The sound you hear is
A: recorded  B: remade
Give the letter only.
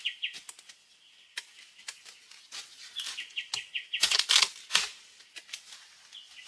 A